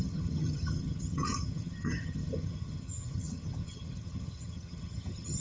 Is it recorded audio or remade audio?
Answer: remade